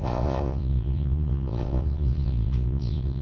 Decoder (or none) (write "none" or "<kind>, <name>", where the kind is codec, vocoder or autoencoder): vocoder, Vocos